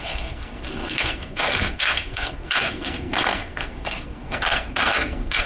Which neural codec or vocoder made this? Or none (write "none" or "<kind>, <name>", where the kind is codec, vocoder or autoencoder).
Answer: codec, SNAC